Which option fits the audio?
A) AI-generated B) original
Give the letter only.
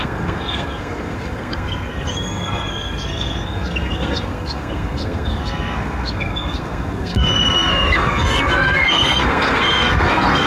A